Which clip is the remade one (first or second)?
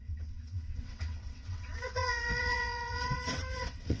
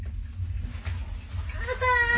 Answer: first